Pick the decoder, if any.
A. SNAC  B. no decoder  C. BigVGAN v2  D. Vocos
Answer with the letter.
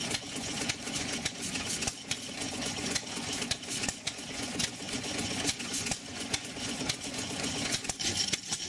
D